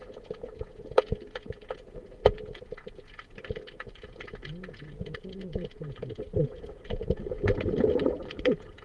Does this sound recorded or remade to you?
remade